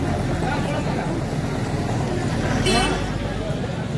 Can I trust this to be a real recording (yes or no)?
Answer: yes